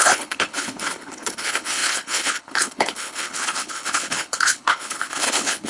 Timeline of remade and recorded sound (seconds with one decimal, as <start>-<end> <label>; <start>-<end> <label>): 0.0-5.7 remade